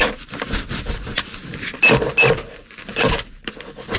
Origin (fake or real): real